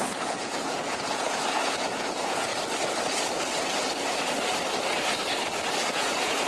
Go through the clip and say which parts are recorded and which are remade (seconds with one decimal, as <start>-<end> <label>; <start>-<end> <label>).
0.0-2.5 remade; 2.5-5.9 recorded; 5.9-6.5 remade